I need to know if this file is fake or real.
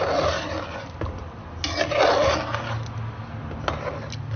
real